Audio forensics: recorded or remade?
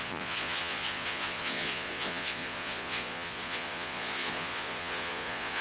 remade